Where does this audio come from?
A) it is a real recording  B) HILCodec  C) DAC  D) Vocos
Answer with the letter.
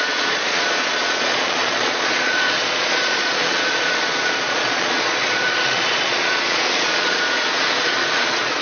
D